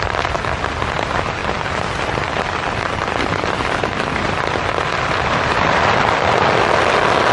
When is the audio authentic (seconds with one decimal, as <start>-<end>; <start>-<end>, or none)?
0.0-1.4; 5.8-7.3